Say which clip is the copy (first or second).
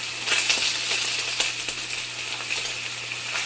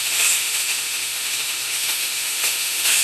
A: second